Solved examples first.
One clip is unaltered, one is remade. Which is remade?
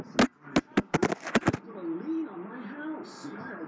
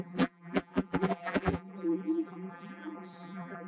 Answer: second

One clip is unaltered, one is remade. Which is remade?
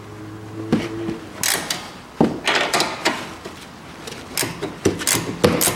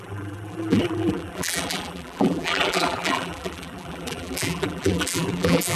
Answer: second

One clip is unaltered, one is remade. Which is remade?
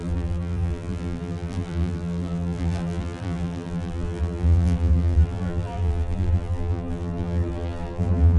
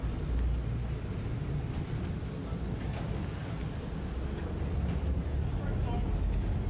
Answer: first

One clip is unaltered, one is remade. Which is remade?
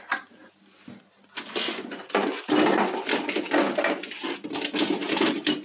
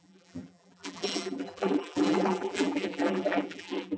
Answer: second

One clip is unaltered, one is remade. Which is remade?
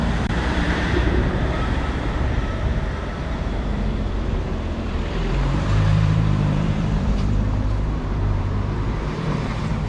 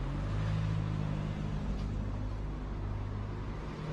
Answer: first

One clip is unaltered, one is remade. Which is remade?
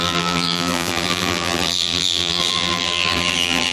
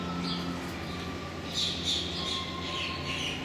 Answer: first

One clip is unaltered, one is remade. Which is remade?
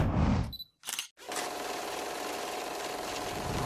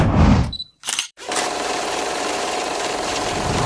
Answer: second